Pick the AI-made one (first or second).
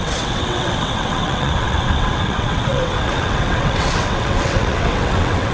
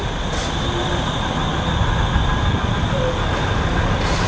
first